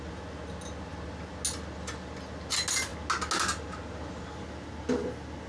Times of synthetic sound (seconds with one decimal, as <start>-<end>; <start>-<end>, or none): none